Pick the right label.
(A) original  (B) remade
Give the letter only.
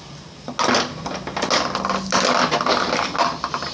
A